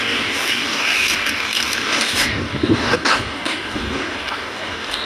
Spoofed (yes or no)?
yes